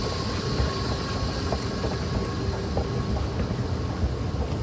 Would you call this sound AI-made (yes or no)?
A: no